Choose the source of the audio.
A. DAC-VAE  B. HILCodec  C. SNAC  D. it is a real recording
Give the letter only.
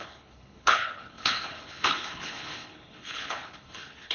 B